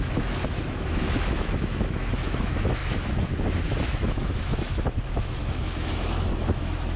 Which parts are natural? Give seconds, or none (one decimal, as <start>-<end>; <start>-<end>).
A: none